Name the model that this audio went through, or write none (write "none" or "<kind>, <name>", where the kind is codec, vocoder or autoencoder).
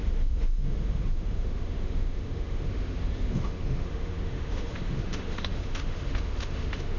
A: autoencoder, DAC-VAE